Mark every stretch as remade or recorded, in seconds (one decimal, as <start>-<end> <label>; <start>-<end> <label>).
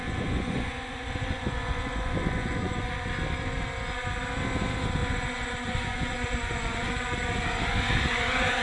0.0-2.9 remade; 2.9-5.0 recorded; 5.0-7.1 remade; 7.1-8.6 recorded